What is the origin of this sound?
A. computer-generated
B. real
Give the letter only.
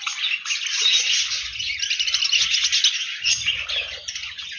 B